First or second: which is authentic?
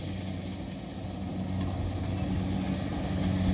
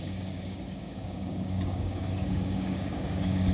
first